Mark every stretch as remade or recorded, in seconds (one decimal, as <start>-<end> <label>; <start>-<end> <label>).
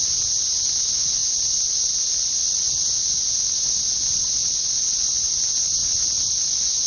0.0-6.9 recorded